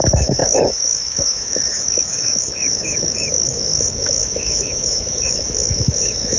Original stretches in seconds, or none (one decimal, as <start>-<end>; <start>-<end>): none